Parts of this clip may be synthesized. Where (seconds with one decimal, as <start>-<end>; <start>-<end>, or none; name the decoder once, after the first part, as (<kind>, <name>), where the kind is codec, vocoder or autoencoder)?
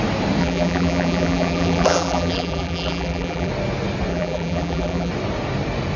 0.4-3.5 (vocoder, BigVGAN v2); 4.1-5.1